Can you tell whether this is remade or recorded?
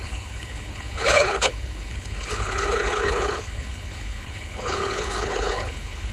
remade